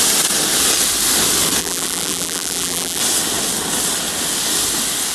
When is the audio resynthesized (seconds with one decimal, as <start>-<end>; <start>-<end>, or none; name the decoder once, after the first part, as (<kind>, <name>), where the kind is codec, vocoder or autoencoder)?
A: 1.6-3.0 (vocoder, BigVGAN v2)